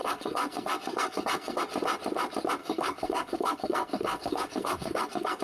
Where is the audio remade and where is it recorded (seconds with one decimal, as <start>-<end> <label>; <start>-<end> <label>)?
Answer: 0.0-1.6 remade; 1.6-2.6 recorded; 2.6-5.4 remade